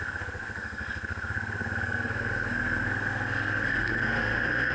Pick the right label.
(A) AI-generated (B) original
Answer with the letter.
A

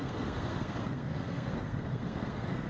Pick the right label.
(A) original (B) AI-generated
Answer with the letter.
B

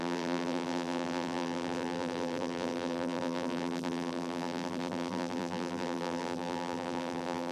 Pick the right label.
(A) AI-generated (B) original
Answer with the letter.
A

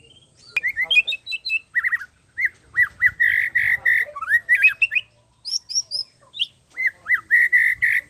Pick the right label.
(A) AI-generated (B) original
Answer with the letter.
B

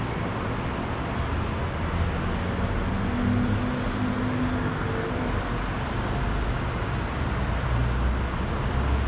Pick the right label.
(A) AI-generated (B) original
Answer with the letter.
B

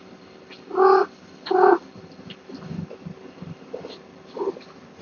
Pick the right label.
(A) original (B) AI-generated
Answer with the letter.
A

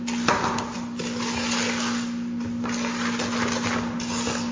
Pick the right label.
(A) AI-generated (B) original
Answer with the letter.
B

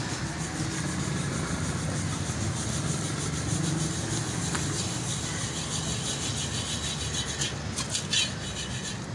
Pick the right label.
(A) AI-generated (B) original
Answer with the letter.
B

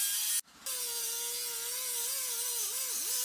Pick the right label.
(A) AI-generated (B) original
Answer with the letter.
B